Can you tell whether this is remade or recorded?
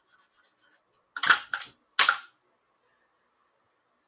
recorded